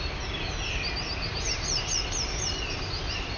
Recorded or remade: recorded